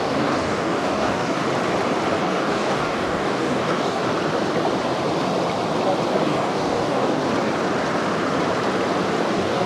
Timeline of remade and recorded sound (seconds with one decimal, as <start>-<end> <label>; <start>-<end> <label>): 0.0-1.4 remade; 1.4-2.2 recorded; 2.2-4.0 remade; 4.0-6.1 recorded; 6.1-7.2 remade; 7.2-9.2 recorded; 9.2-9.7 remade